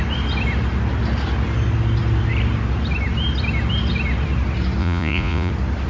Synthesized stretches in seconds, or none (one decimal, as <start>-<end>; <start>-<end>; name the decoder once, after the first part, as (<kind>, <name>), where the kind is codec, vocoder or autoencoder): 4.8-5.5 (vocoder, Vocos)